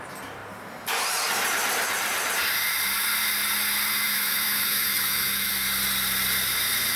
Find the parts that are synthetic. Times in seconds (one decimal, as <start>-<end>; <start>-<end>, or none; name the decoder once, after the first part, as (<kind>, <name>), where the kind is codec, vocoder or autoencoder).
3.9-5.5 (autoencoder, DAC-VAE)